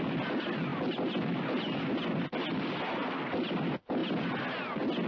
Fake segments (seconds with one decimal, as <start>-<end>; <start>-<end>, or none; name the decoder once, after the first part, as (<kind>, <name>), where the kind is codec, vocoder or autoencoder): none